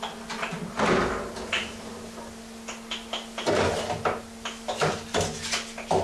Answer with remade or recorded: recorded